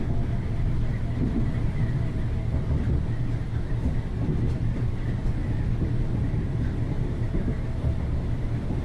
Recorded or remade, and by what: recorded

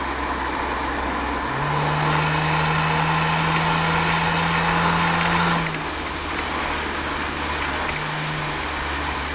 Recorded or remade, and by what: recorded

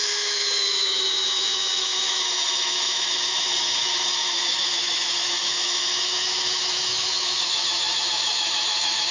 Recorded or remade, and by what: remade, autoencoder, DAC-VAE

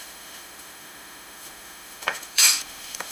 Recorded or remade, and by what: remade, autoencoder, DAC-VAE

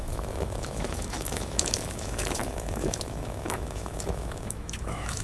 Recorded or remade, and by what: remade, autoencoder, DAC-VAE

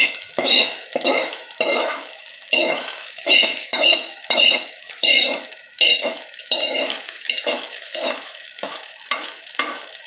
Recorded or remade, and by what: remade, autoencoder, DAC-VAE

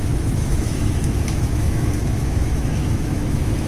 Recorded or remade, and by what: remade, autoencoder, DAC-VAE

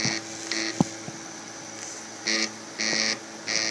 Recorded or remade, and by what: recorded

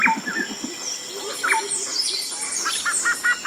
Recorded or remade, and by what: recorded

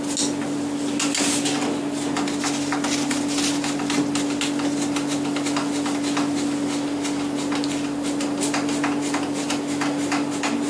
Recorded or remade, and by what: recorded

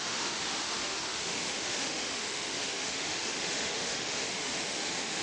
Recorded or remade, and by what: remade, autoencoder, DAC-VAE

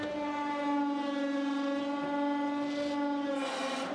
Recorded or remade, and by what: recorded